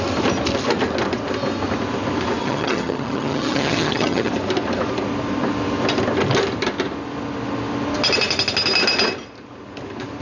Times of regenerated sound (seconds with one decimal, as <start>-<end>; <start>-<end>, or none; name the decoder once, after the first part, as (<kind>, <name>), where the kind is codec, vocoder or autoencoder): 2.4-4.3 (vocoder, HiFi-GAN)